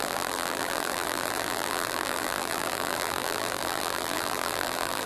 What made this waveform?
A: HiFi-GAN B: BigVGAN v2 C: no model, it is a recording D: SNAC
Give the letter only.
B